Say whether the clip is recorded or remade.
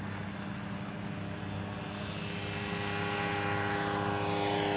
recorded